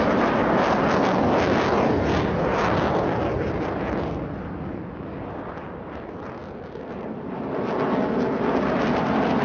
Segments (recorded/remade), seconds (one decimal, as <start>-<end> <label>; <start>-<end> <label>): 0.0-9.4 recorded